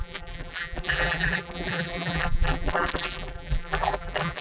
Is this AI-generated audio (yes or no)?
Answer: yes